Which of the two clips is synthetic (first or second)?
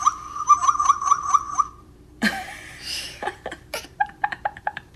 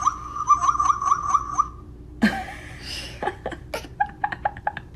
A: first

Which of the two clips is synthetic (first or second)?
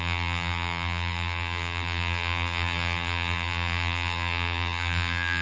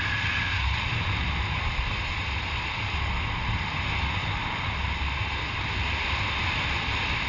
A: first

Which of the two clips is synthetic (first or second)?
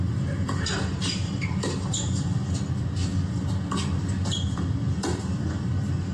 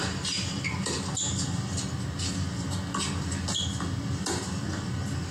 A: first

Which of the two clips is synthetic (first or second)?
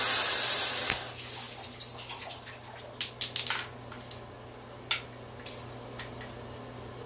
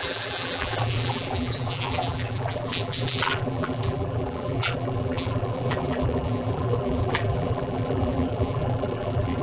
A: second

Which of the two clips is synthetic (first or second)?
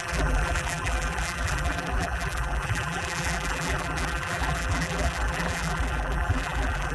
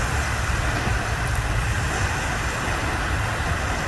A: first